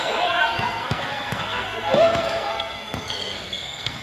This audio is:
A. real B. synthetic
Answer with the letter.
B